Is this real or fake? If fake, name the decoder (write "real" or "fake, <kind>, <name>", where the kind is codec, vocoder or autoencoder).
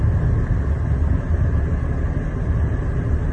real